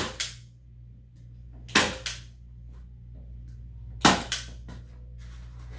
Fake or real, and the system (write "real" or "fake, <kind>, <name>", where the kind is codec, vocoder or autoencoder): real